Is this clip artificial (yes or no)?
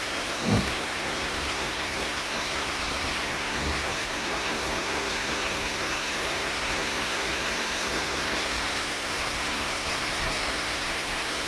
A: yes